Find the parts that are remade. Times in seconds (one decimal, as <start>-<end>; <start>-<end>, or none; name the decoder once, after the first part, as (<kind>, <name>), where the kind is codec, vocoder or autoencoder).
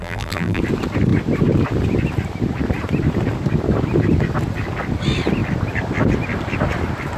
0.0-0.6 (vocoder, BigVGAN v2)